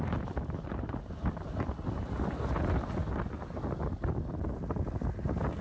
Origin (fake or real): real